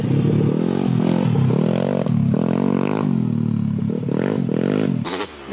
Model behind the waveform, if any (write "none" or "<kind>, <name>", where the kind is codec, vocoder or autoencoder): none